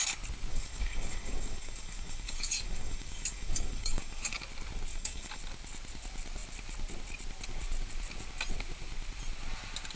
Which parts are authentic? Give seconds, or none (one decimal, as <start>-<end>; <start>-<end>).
0.0-0.5; 4.4-4.9; 5.4-10.0